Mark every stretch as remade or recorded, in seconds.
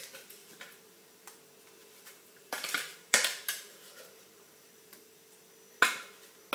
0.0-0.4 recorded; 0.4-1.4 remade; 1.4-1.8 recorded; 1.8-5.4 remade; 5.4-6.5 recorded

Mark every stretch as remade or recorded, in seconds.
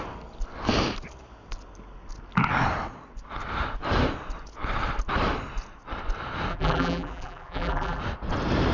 0.0-6.5 recorded; 6.5-8.0 remade; 8.0-8.7 recorded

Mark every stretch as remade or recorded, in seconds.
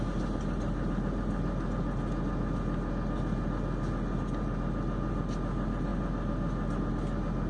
0.0-7.5 recorded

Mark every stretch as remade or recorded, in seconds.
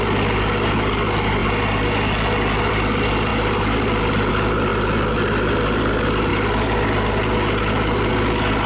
0.0-8.7 recorded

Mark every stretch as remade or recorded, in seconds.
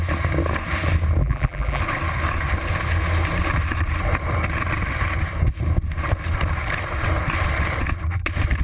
0.0-1.2 recorded; 1.2-1.8 remade; 1.8-8.6 recorded